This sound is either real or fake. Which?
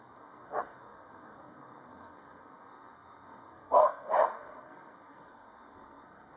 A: fake